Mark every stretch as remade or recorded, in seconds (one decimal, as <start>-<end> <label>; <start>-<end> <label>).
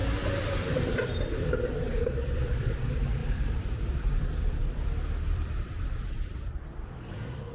0.0-7.5 remade